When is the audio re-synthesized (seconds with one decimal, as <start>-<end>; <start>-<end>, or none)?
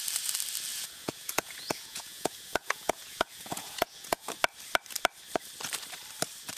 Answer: 0.7-4.3